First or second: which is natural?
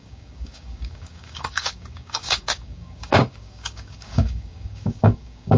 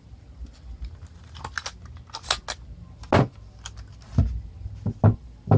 second